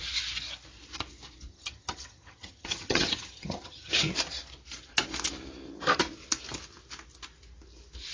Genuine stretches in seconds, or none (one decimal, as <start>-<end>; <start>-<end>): 0.0-1.5; 3.9-8.1